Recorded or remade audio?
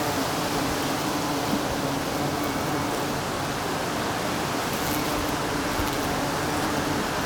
recorded